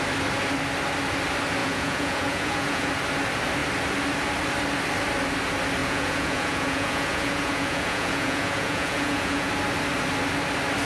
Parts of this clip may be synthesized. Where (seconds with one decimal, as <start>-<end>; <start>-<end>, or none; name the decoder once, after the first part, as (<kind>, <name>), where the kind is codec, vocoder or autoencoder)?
1.6-2.9 (vocoder, Vocos); 5.8-9.5